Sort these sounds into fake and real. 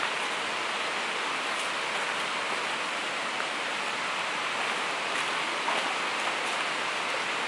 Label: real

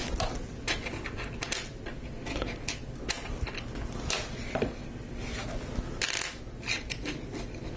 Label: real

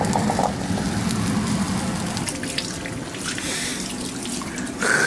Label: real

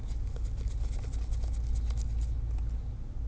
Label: real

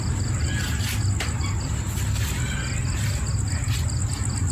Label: real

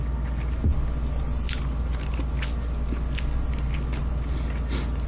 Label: real